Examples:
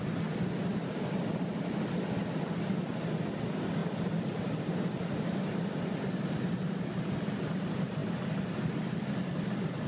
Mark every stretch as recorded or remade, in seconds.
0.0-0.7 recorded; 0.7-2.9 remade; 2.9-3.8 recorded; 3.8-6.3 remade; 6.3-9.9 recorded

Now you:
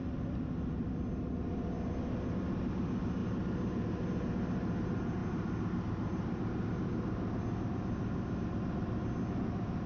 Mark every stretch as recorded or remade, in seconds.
0.0-9.9 recorded

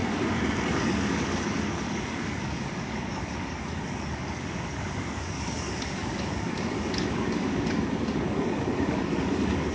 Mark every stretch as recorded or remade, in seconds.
0.0-9.7 remade

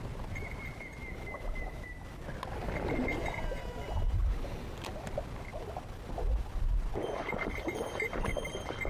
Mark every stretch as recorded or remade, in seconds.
0.0-1.0 recorded; 1.0-2.3 remade; 2.3-3.2 recorded; 3.2-4.6 remade; 4.6-5.5 recorded; 5.5-8.9 remade